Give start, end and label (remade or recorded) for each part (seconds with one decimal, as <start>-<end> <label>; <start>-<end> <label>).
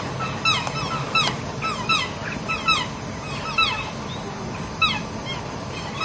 0.0-6.0 recorded